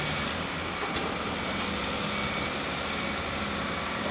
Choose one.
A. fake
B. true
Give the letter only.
B